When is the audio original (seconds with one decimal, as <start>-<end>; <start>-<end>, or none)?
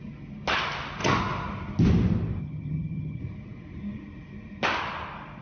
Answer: 0.0-2.4; 3.2-5.4